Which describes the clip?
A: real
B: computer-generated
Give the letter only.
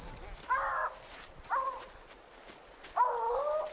A